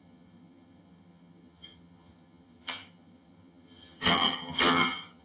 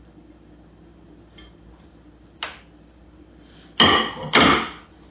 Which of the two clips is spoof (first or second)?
first